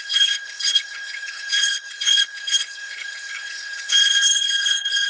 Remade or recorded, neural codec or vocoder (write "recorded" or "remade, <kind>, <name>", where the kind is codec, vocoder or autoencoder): remade, codec, HILCodec